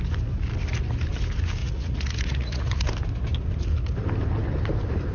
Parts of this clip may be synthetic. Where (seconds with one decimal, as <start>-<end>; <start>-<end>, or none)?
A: 1.6-2.9